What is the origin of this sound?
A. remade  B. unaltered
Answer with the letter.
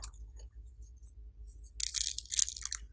B